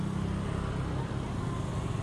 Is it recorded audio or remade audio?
recorded